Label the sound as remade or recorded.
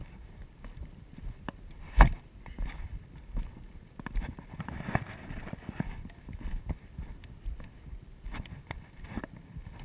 recorded